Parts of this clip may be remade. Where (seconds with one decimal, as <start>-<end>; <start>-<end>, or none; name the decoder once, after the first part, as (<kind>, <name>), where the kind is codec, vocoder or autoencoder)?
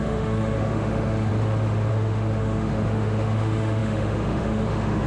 0.0-1.3 (autoencoder, DAC-VAE); 1.9-5.1